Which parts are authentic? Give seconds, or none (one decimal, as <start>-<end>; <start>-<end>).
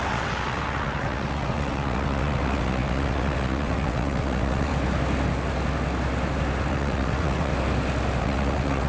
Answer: 4.7-6.7; 7.5-8.2